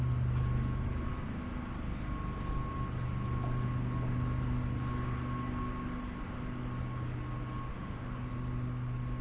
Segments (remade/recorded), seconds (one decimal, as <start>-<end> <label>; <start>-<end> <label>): 0.0-7.7 recorded; 7.7-8.3 remade; 8.3-9.2 recorded